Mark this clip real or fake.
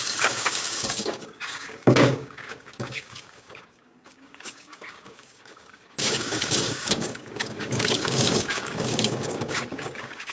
fake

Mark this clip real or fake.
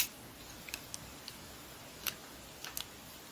real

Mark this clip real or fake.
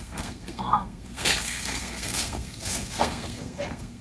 fake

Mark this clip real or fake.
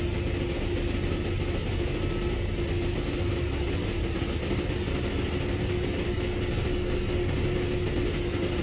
real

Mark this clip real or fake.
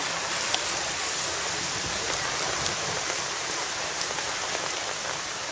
real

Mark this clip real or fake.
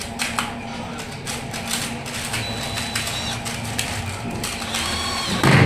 real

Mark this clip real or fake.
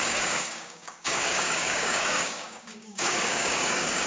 fake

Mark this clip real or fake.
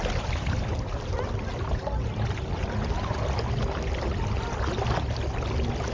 real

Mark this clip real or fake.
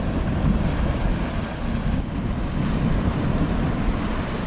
real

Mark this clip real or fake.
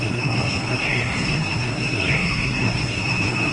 fake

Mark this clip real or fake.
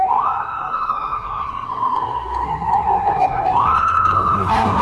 fake